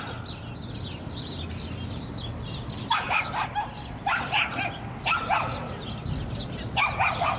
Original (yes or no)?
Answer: yes